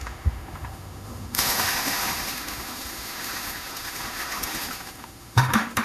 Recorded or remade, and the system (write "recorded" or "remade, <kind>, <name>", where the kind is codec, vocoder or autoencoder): remade, autoencoder, DAC-VAE